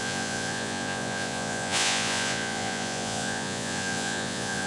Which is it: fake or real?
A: fake